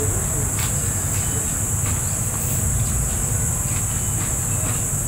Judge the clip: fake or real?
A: real